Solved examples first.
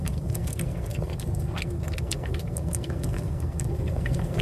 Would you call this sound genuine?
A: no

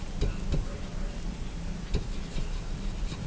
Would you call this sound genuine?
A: yes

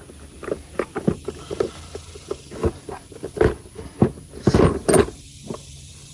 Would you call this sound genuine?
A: yes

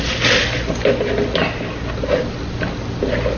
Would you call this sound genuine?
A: yes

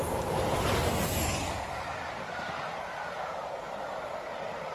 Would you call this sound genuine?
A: yes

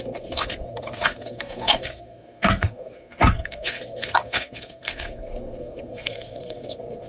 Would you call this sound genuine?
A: no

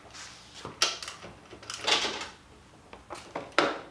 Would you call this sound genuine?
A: yes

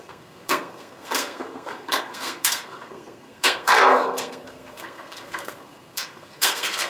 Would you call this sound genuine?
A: no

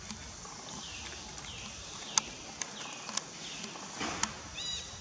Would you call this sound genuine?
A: yes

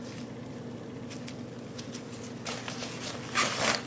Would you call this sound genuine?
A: yes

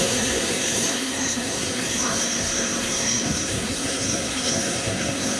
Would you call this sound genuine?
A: no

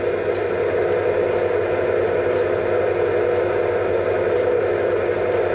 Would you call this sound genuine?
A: yes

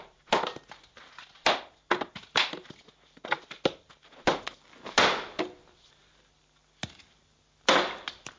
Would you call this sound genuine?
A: yes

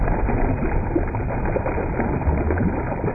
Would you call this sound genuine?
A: yes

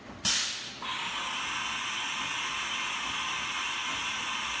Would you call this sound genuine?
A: yes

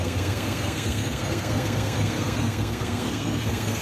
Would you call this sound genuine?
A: no